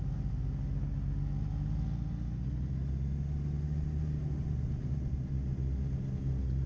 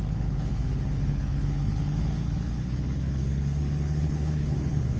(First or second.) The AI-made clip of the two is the second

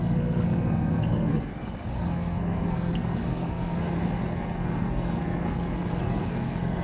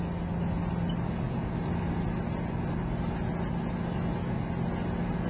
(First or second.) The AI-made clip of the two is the first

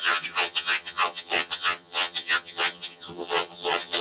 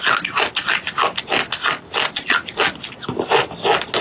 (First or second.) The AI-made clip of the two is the first